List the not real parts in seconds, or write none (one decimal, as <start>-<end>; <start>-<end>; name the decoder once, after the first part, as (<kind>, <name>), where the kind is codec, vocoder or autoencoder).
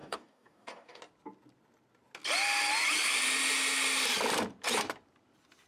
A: 0.0-1.0 (codec, DAC)